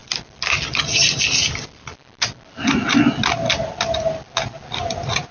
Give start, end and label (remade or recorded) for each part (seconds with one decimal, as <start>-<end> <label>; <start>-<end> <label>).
0.0-5.3 recorded